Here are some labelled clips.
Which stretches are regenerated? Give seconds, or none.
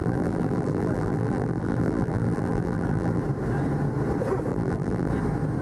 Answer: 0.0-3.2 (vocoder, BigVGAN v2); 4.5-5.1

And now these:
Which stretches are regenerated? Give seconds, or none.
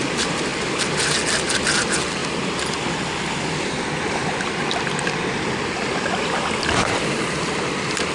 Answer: 0.0-8.1 (vocoder, BigVGAN v2)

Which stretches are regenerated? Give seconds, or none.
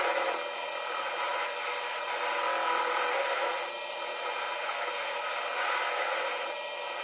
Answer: none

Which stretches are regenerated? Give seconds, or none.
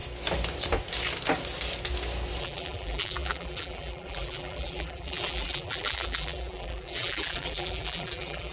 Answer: 2.4-8.5 (vocoder, BigVGAN v2)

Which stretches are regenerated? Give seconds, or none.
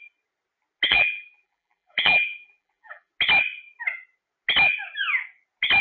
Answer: 0.9-3.1 (vocoder, BigVGAN v2)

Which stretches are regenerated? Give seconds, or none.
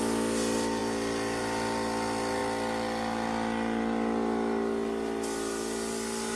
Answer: none